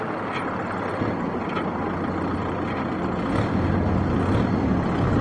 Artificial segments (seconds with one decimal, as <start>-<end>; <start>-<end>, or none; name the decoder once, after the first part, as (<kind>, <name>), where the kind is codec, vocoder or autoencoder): none